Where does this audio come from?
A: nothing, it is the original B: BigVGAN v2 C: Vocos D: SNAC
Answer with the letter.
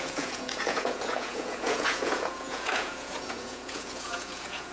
C